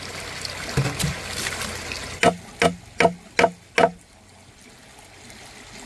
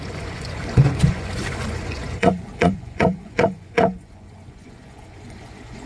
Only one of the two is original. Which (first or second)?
first